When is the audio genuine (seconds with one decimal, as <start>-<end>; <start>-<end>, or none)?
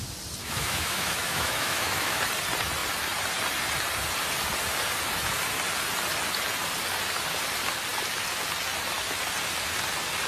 0.0-0.4; 2.2-10.3